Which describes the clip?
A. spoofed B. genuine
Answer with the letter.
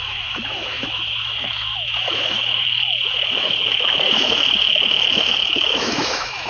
A